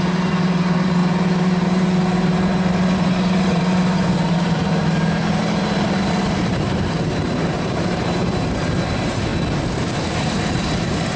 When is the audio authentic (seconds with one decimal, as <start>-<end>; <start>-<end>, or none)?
9.3-10.2